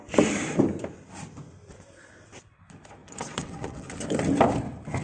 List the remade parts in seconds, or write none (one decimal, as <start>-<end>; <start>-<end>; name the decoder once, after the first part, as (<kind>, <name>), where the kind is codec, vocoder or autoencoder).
3.0-3.8 (vocoder, WaveNeXt)